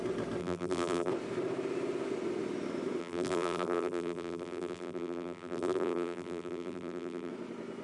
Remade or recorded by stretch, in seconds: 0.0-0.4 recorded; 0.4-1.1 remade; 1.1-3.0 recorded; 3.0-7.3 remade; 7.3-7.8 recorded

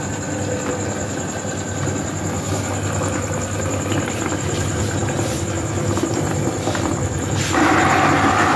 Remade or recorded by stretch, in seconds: 0.0-5.0 recorded; 5.0-7.3 remade; 7.3-8.6 recorded

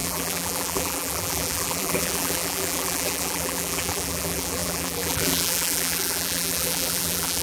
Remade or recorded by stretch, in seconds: 0.0-7.4 remade

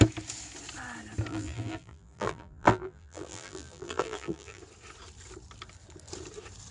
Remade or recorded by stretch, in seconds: 0.0-1.3 recorded; 1.3-4.6 remade; 4.6-6.7 recorded

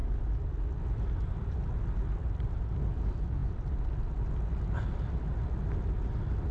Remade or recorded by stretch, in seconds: 0.0-6.5 recorded

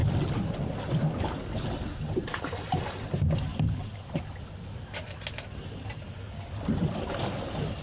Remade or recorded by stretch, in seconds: 0.0-1.9 recorded; 1.9-2.6 remade; 2.6-7.8 recorded

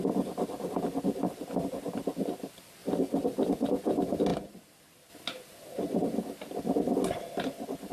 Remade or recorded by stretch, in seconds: 0.0-2.8 recorded; 2.8-3.5 remade; 3.5-7.9 recorded